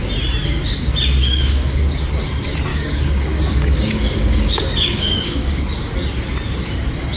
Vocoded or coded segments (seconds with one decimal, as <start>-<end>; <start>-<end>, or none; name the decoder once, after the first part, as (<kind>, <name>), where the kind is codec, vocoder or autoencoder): 1.2-1.8 (codec, DAC); 2.7-5.6